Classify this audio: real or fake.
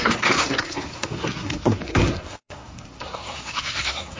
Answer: fake